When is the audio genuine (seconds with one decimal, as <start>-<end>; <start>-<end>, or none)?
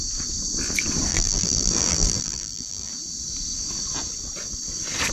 0.0-1.1; 2.9-5.1